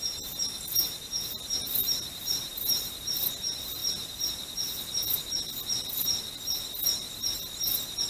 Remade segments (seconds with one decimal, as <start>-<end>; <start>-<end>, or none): 1.8-3.2